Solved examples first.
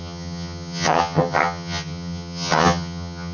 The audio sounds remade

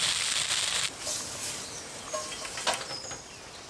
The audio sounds recorded